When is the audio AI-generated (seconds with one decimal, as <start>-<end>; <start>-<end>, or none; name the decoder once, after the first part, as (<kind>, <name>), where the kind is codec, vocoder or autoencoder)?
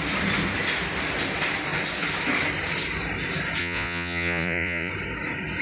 3.6-4.9 (vocoder, Vocos)